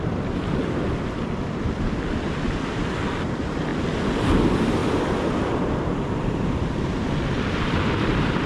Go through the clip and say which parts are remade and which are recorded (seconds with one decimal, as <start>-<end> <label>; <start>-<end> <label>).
0.0-3.7 remade; 3.7-4.3 recorded; 4.3-8.5 remade